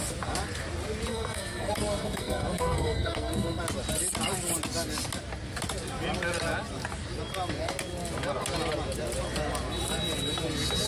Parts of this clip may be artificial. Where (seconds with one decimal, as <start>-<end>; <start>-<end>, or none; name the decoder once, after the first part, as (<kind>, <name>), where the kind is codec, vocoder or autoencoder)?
1.1-3.6 (codec, SNAC)